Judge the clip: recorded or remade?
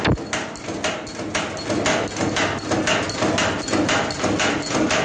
recorded